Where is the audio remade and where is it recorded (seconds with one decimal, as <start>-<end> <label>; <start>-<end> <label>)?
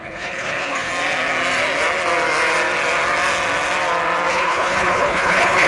0.0-0.9 remade; 0.9-4.3 recorded; 4.3-5.7 remade